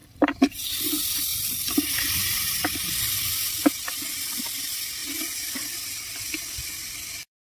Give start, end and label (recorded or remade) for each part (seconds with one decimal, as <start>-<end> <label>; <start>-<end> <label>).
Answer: 0.0-3.3 remade; 3.3-3.9 recorded; 3.9-5.0 remade; 5.0-6.2 recorded; 6.2-7.4 remade